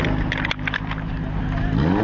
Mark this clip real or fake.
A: real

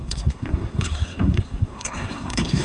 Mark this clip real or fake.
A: fake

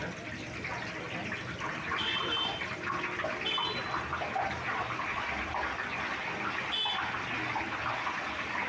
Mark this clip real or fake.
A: real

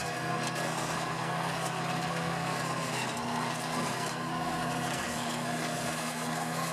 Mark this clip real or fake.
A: fake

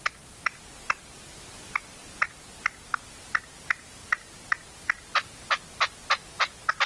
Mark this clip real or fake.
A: real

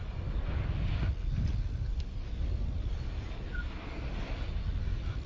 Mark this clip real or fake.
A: real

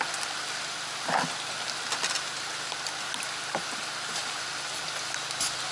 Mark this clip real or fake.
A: real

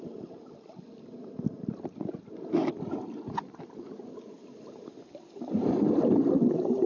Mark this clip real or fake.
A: real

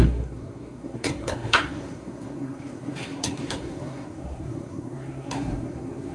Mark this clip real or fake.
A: fake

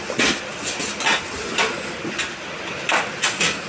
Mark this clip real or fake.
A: real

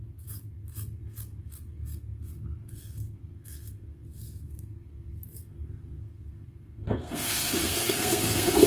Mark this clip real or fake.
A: fake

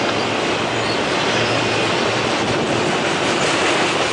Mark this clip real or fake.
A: real